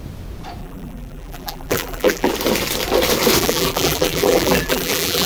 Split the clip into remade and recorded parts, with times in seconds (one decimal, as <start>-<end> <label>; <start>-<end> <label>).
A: 0.0-0.6 recorded; 0.6-2.3 remade; 2.3-3.4 recorded; 3.4-5.3 remade